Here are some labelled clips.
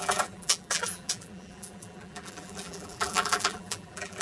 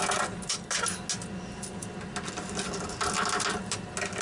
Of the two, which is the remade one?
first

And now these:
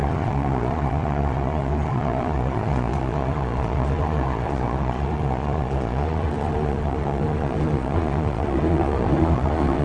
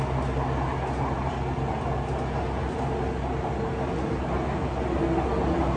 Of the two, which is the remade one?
first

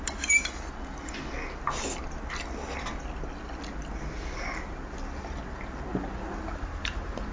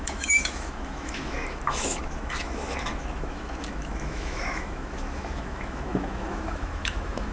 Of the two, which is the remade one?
second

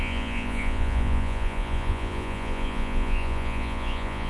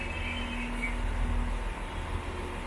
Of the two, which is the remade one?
first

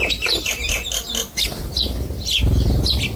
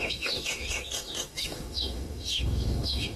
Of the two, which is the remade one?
second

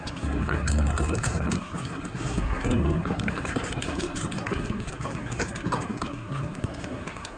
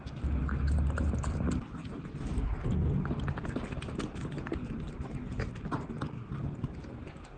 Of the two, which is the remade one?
first